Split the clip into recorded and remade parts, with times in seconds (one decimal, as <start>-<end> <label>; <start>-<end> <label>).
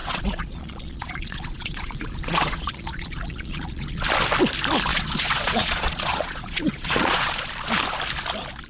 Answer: 0.0-4.0 remade; 4.0-4.9 recorded; 4.9-7.3 remade; 7.3-8.7 recorded